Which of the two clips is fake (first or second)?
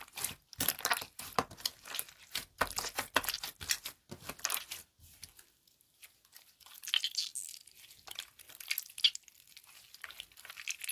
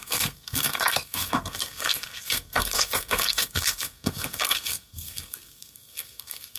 second